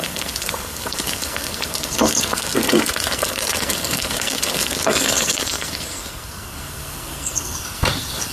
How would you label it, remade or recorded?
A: remade